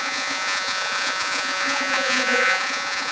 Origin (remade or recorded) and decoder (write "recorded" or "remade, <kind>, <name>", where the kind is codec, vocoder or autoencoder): remade, vocoder, Vocos